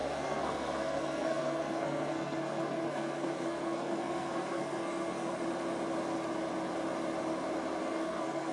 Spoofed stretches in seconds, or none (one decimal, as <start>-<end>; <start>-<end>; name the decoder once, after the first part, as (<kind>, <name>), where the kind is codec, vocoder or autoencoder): 0.0-5.3 (codec, SNAC); 7.8-8.5